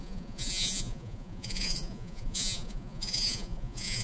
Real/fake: fake